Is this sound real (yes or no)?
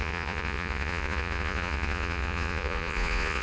no